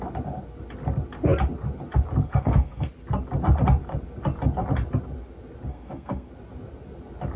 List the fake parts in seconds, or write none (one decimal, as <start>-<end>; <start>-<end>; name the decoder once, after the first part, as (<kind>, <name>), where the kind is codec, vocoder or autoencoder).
2.2-2.9 (codec, SNAC); 5.7-6.3